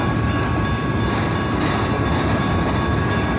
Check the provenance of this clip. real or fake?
real